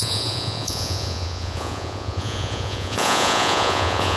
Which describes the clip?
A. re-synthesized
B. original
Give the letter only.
A